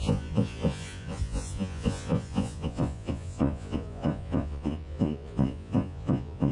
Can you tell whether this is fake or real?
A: fake